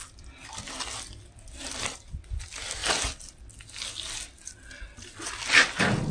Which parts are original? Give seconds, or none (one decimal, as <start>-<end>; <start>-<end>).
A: 0.5-6.1